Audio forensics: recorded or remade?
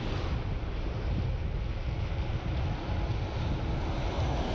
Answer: recorded